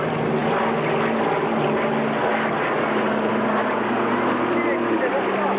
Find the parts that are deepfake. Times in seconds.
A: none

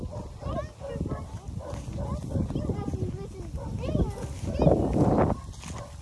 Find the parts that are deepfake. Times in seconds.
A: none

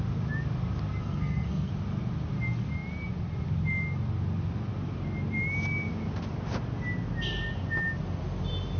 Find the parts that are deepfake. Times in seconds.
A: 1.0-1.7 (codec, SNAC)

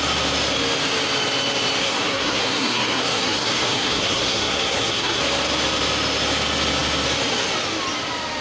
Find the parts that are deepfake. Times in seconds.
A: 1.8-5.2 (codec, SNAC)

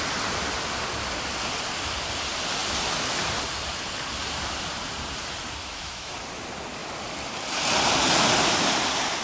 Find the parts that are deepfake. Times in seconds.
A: 5.6-6.1 (autoencoder, DAC-VAE)

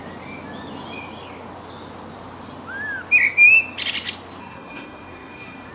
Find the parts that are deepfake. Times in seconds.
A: 4.4-5.7 (codec, SNAC)

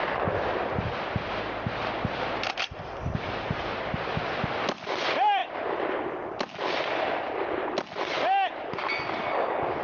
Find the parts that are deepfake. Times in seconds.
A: none